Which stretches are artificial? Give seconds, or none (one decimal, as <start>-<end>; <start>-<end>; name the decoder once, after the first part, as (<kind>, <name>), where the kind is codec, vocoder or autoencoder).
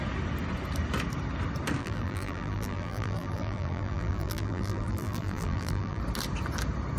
1.8-6.0 (vocoder, BigVGAN v2)